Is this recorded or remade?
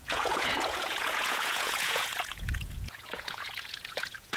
remade